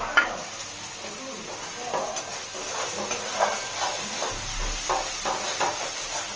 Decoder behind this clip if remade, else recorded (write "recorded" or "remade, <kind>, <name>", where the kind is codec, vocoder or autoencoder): recorded